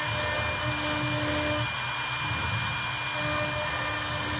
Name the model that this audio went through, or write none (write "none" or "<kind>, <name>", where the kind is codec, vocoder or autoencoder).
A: none